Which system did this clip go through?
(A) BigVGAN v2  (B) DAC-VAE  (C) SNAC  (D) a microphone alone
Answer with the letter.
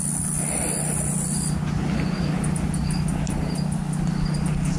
D